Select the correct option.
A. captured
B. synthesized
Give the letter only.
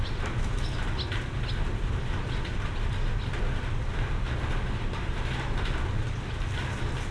A